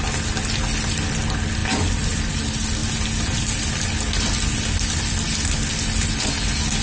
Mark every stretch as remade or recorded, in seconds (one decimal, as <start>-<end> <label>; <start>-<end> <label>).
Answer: 0.0-6.8 recorded